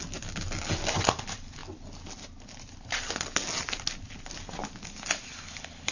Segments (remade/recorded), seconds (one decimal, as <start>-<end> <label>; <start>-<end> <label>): 0.0-5.9 recorded